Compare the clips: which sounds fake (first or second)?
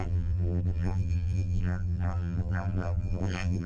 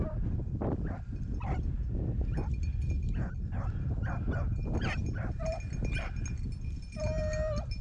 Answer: first